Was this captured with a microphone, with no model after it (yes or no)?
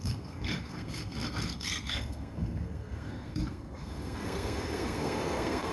no